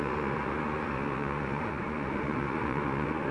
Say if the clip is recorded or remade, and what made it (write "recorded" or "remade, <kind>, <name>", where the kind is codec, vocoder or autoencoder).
remade, vocoder, Vocos